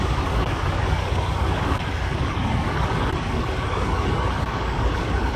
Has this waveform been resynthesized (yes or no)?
yes